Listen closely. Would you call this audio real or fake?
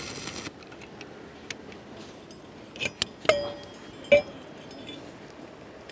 real